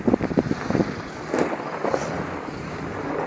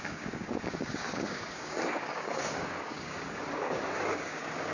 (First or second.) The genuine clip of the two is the first